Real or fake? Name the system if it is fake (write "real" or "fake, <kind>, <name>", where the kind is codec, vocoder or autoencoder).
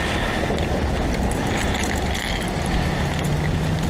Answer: real